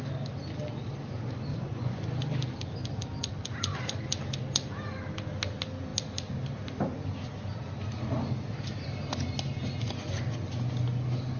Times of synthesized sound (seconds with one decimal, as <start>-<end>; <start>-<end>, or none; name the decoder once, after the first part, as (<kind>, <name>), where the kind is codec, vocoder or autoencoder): 1.5-2.0 (vocoder, Vocos)